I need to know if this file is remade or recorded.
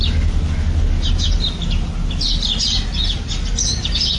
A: recorded